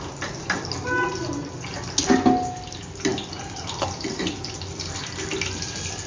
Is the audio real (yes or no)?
yes